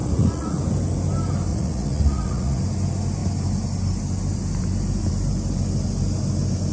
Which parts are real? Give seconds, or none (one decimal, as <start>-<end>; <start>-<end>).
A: 0.6-1.5; 2.6-6.7